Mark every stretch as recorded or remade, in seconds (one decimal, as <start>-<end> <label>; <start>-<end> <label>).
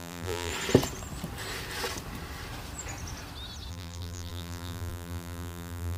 0.0-0.5 remade; 0.5-3.7 recorded; 3.7-6.0 remade